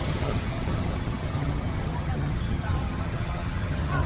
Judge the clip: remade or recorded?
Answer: remade